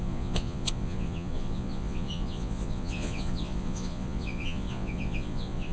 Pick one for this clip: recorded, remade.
remade